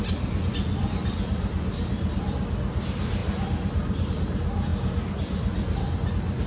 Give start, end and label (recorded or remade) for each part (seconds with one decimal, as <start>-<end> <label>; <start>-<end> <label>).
0.0-6.5 recorded